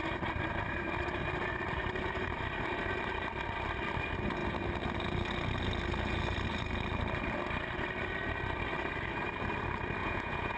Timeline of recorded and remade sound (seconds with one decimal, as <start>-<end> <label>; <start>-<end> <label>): 0.0-10.0 recorded; 10.0-10.6 remade